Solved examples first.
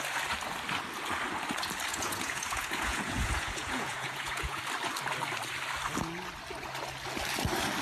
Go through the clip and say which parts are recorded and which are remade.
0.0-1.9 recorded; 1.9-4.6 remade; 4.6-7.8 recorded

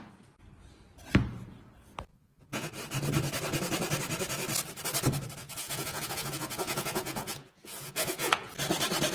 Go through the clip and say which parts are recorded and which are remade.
0.0-2.1 recorded; 2.1-2.7 remade; 2.7-5.4 recorded; 5.4-8.5 remade; 8.5-9.1 recorded

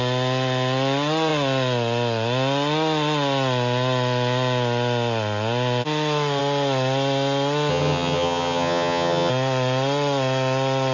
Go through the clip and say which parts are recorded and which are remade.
0.0-7.7 recorded; 7.7-9.3 remade; 9.3-10.9 recorded

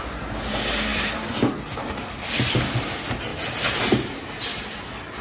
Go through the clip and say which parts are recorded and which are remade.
0.0-5.2 recorded